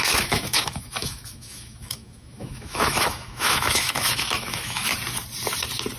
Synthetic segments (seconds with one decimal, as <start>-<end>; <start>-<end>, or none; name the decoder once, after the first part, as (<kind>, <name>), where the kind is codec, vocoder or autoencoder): 0.0-4.9 (autoencoder, DAC-VAE)